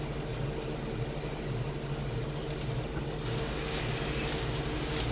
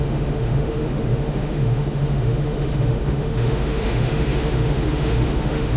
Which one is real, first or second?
first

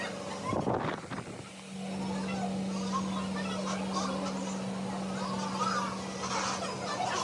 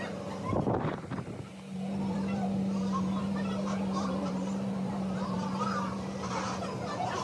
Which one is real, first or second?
first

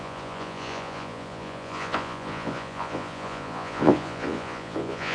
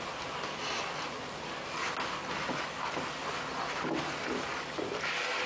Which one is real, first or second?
second